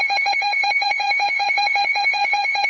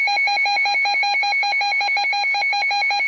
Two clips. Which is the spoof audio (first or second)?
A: first